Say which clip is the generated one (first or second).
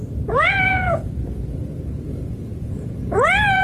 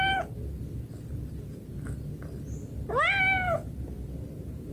first